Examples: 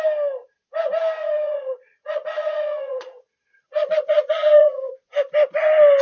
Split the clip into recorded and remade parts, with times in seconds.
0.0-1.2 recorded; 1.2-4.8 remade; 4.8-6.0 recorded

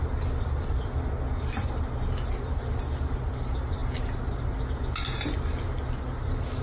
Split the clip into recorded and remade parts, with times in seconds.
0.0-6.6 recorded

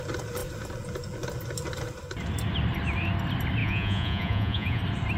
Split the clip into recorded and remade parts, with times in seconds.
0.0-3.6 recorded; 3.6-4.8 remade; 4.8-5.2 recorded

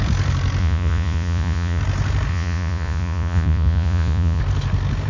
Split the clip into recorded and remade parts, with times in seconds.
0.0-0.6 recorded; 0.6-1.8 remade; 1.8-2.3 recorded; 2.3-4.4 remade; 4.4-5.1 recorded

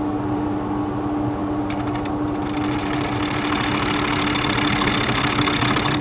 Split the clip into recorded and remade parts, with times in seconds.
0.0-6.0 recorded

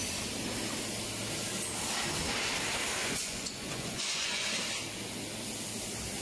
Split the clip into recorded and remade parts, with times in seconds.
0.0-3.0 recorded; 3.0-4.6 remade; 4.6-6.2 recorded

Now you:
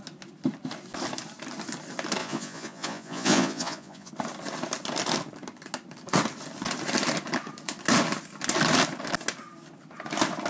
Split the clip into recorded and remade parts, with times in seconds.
0.0-2.2 recorded; 2.2-4.1 remade; 4.1-10.5 recorded